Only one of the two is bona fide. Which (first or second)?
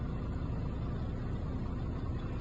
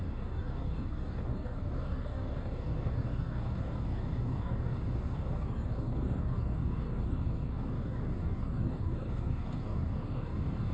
first